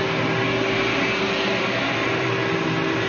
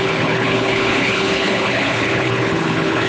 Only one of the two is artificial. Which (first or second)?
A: second